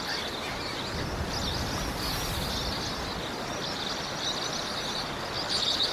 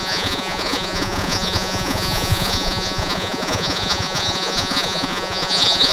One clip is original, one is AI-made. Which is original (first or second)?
first